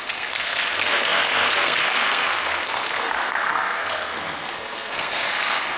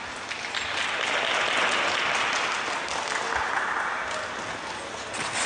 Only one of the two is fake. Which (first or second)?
first